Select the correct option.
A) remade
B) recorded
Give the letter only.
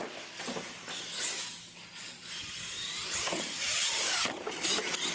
B